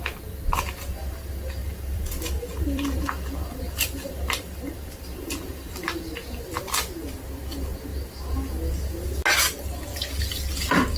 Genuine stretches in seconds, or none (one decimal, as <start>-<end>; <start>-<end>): 0.0-1.6; 6.4-11.0